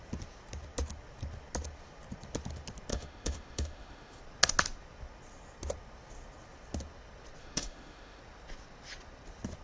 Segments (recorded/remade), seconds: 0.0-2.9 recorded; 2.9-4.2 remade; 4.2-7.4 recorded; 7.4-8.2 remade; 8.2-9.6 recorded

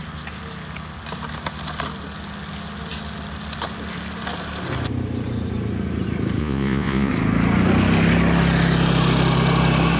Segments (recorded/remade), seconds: 0.0-6.4 recorded; 6.4-7.1 remade; 7.1-10.0 recorded

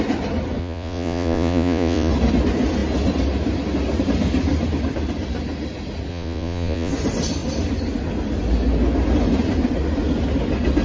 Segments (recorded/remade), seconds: 0.0-0.6 recorded; 0.6-2.1 remade; 2.1-6.1 recorded; 6.1-6.9 remade; 6.9-10.8 recorded

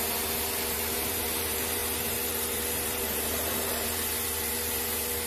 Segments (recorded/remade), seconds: 0.0-5.3 remade

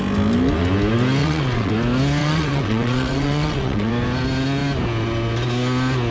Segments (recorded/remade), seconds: 0.0-1.2 recorded; 1.2-1.7 remade; 1.7-2.2 recorded; 2.2-3.9 remade; 3.9-6.1 recorded